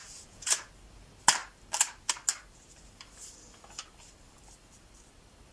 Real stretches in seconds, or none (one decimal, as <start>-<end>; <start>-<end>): 0.7-5.5